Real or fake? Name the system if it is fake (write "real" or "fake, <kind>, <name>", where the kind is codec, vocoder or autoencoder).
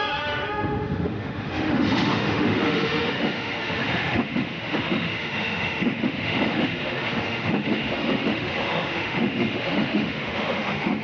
fake, autoencoder, DAC-VAE